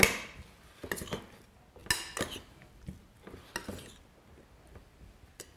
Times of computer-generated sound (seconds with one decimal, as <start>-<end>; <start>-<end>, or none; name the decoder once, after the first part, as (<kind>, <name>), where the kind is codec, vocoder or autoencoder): none